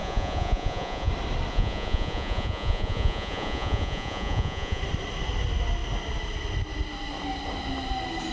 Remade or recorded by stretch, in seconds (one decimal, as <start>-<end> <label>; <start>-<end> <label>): 0.0-1.1 remade; 1.1-1.5 recorded; 1.5-4.8 remade; 4.8-8.3 recorded